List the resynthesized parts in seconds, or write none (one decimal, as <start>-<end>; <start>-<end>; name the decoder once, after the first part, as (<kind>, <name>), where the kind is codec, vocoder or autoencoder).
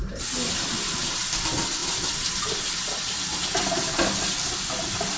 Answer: none